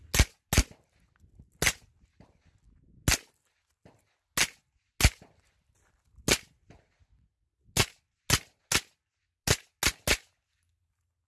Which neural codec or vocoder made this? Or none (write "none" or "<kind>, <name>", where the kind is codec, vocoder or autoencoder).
none